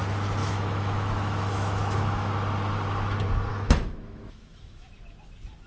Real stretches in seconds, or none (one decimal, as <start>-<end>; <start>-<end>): 0.0-0.4; 2.3-3.5; 4.9-5.7